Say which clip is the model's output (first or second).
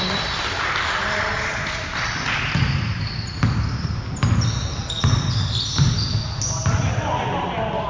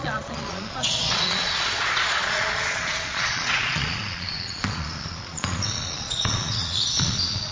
second